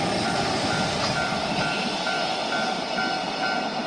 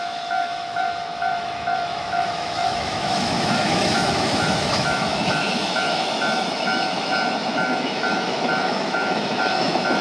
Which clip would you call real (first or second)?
first